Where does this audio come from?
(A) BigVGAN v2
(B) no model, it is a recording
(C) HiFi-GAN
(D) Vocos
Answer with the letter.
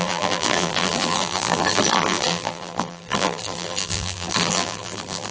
A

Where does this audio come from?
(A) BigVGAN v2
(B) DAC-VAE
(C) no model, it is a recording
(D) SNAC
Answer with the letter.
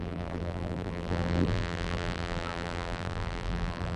A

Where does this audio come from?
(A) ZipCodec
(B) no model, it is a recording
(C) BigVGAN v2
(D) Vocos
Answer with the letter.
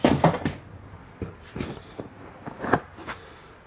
B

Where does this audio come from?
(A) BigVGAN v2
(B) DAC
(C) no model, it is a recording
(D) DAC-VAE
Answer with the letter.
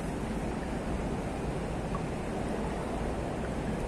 C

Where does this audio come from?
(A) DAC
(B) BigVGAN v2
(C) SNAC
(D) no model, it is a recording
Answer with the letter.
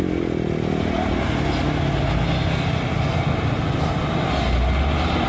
D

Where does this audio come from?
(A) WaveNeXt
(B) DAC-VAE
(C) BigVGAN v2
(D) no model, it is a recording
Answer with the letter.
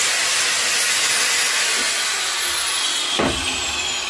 D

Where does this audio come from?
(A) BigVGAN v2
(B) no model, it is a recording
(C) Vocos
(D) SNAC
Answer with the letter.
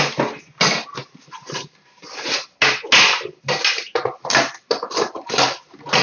B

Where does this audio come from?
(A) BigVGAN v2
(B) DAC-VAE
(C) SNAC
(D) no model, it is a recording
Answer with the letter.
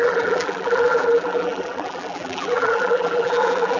A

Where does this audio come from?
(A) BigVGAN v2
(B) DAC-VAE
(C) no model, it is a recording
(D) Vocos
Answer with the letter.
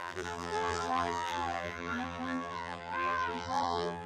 A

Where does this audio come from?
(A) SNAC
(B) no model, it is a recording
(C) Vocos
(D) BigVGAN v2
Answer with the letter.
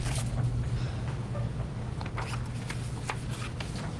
B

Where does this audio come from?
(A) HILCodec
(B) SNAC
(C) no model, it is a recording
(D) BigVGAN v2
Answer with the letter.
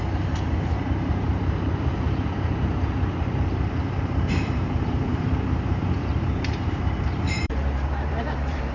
D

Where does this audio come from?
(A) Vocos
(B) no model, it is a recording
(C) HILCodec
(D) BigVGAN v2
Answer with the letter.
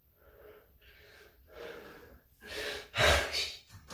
B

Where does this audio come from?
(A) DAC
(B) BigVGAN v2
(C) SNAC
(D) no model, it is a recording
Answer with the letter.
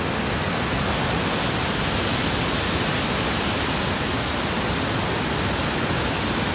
D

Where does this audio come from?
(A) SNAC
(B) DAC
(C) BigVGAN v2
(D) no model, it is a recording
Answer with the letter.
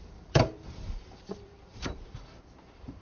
C